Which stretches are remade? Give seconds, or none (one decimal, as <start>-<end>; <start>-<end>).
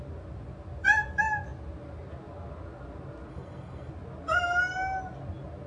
3.3-3.9